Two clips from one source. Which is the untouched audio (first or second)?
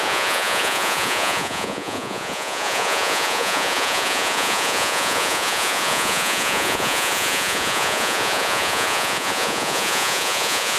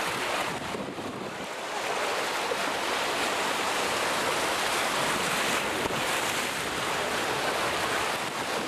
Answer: second